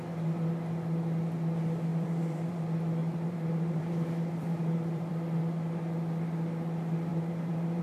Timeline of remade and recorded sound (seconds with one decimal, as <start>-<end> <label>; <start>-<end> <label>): 0.0-1.9 recorded; 1.9-2.6 remade; 2.6-3.0 recorded; 3.0-5.1 remade; 5.1-7.1 recorded; 7.1-7.8 remade